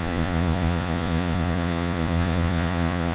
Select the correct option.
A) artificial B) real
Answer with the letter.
A